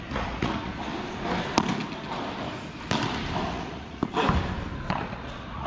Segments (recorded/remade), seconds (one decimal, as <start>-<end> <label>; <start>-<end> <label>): 0.0-0.9 remade; 0.9-3.5 recorded; 3.5-4.0 remade; 4.0-4.9 recorded; 4.9-5.7 remade